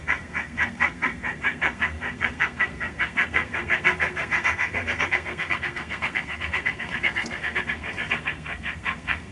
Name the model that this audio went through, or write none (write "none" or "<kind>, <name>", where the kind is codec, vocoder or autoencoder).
codec, SNAC